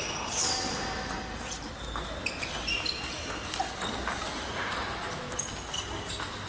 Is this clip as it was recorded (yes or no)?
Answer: yes